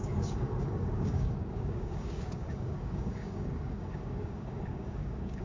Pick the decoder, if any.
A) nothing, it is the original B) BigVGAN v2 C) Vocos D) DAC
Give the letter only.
D